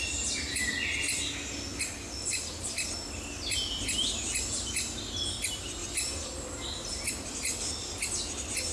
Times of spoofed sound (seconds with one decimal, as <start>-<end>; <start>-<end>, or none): none